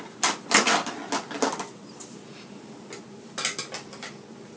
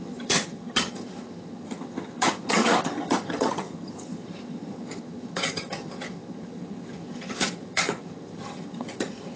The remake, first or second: second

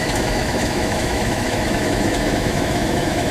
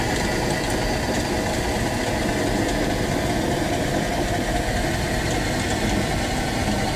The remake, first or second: first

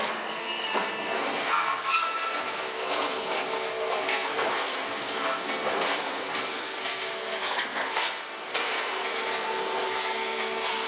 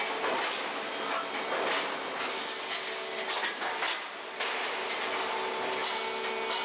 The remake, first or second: first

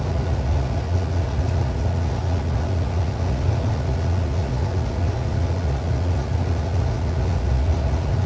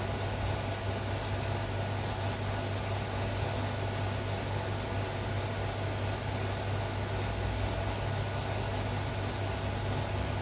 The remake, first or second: first